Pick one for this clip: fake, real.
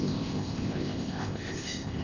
fake